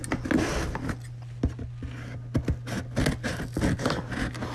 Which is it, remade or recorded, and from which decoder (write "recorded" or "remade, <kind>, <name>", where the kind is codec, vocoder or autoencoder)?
recorded